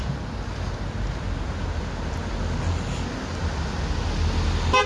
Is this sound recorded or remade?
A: recorded